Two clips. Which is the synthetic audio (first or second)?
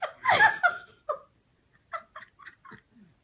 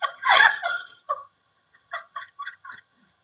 second